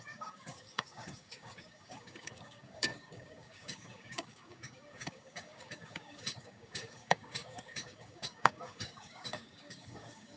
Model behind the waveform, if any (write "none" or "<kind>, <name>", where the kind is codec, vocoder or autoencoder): codec, DAC